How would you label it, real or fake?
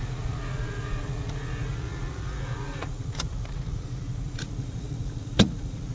fake